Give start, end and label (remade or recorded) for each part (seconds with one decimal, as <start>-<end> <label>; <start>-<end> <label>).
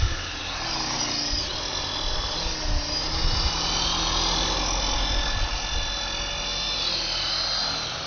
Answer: 0.0-8.1 recorded